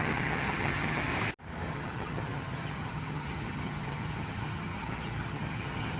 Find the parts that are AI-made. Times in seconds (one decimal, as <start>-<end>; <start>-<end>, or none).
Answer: 0.0-1.1; 1.7-6.0